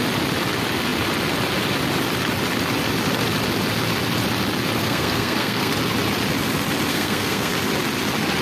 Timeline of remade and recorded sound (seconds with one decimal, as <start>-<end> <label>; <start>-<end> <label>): 0.0-4.8 recorded; 4.8-5.7 remade; 5.7-6.9 recorded; 6.9-7.5 remade; 7.5-8.4 recorded